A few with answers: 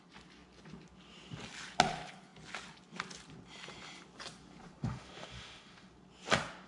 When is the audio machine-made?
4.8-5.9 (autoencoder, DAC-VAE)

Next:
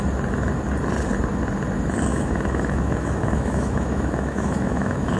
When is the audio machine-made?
2.1-5.2 (autoencoder, DAC-VAE)

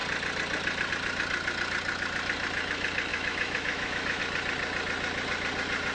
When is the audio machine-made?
3.1-4.2 (autoencoder, DAC-VAE)

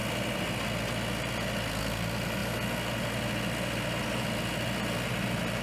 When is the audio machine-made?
none

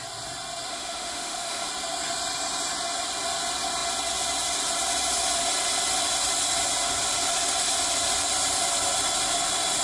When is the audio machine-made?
0.7-1.7 (autoencoder, DAC-VAE)

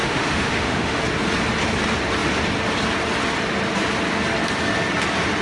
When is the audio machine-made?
0.0-1.0 (autoencoder, DAC-VAE)